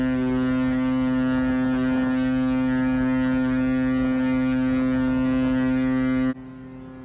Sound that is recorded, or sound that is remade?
recorded